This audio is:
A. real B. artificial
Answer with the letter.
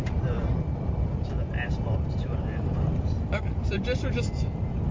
B